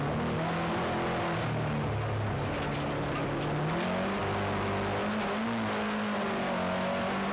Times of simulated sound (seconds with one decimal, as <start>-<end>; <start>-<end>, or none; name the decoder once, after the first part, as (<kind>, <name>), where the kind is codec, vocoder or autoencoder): none